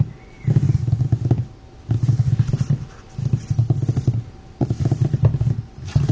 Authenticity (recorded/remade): recorded